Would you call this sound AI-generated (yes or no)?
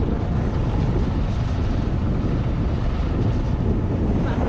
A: no